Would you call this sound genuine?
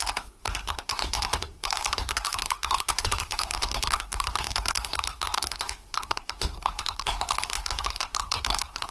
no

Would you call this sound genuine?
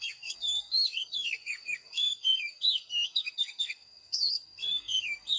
no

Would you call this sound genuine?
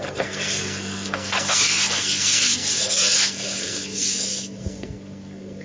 no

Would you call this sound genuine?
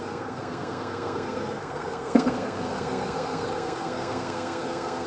no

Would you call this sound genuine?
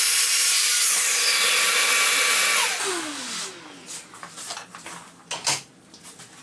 yes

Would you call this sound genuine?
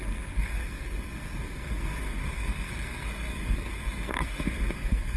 no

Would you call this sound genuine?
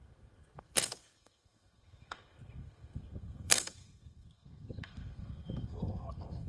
no